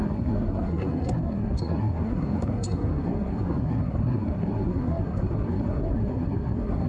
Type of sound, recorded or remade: remade